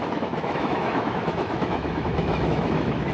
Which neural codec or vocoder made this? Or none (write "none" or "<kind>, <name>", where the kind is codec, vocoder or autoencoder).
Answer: autoencoder, DAC-VAE